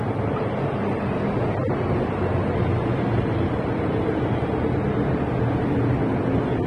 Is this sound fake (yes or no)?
no